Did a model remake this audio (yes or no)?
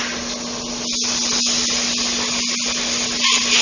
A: no